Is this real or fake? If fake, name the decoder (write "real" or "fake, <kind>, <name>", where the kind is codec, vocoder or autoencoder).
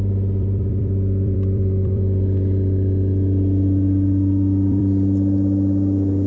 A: fake, vocoder, BigVGAN v2